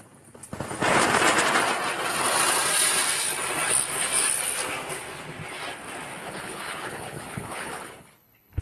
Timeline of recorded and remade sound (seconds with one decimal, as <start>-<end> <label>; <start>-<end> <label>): 0.0-6.2 recorded; 6.2-8.6 remade